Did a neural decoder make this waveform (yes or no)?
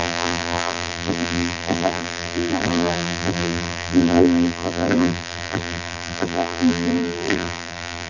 yes